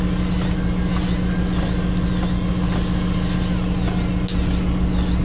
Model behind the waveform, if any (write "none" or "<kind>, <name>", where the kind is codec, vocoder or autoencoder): none